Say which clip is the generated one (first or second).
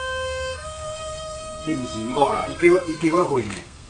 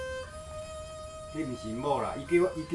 first